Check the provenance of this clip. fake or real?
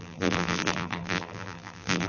fake